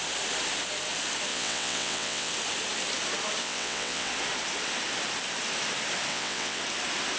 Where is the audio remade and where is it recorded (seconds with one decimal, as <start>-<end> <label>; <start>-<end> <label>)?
0.0-1.3 recorded; 1.3-2.3 remade; 2.3-3.4 recorded; 3.4-4.1 remade; 4.1-6.1 recorded; 6.1-6.6 remade; 6.6-7.2 recorded

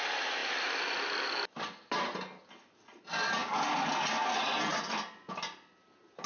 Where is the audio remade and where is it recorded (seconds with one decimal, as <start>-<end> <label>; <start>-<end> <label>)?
0.0-6.3 recorded

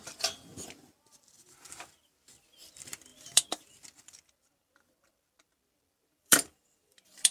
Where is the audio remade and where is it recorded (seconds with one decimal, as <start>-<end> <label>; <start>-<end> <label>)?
0.0-0.5 remade; 0.5-1.0 recorded; 1.0-7.3 remade

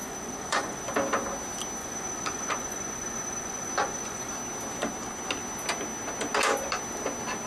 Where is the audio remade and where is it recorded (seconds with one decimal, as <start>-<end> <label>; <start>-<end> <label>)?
0.0-0.8 remade; 0.8-1.8 recorded; 1.8-4.3 remade; 4.3-7.5 recorded

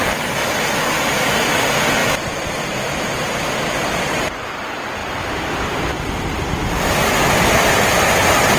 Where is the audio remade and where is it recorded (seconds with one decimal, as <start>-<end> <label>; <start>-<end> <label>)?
0.0-8.6 recorded

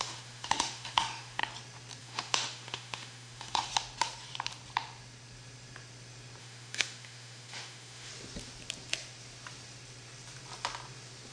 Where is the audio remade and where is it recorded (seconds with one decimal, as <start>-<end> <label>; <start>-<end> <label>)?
0.0-1.4 remade; 1.4-2.0 recorded; 2.0-3.7 remade; 3.7-6.4 recorded; 6.4-8.1 remade; 8.1-11.3 recorded